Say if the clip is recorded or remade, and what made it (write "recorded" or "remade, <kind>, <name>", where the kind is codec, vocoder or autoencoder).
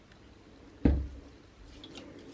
recorded